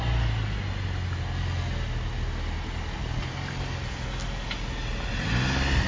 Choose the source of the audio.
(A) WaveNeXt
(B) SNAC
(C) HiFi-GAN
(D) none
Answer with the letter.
D